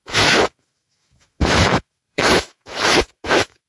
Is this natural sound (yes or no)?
no